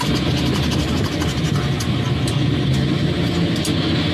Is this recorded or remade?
recorded